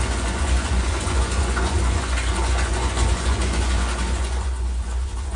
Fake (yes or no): yes